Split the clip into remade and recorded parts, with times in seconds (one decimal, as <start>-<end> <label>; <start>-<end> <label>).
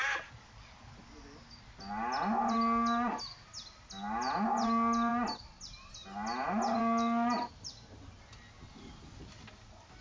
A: 0.0-10.0 recorded